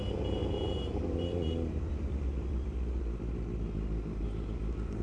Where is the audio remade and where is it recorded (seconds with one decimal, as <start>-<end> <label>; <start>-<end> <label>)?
0.0-0.4 recorded; 0.4-3.0 remade; 3.0-5.0 recorded